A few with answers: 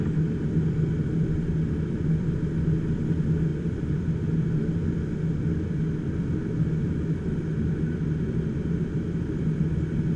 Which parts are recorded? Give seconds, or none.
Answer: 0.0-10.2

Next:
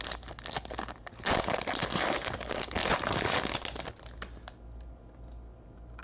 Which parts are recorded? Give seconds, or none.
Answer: 0.0-6.0

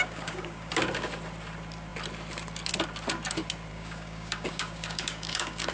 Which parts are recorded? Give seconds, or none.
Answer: 0.7-3.7